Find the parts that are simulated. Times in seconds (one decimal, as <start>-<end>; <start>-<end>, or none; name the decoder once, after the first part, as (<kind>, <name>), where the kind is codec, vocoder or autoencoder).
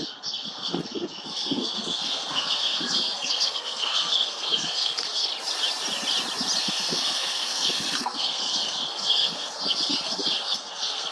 0.0-5.3 (codec, SNAC); 6.6-11.1